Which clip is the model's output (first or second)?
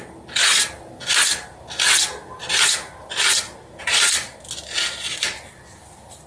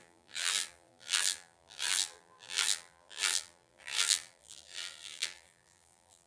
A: second